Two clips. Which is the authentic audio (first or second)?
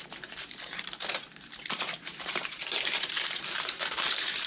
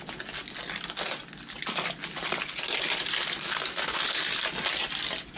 second